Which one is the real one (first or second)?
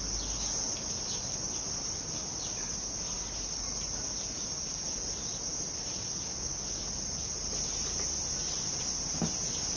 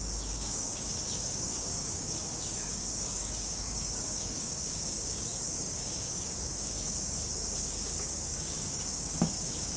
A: first